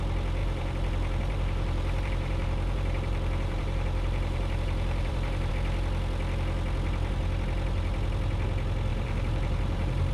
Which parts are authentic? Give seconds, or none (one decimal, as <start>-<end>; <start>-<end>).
0.0-0.4; 5.5-8.9